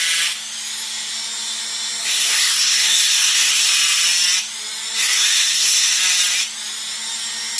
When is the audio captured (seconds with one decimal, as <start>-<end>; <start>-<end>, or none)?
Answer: 0.0-2.0; 3.7-5.0; 6.0-7.6